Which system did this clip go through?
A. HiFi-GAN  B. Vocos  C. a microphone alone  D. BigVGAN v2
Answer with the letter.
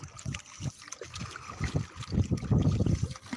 C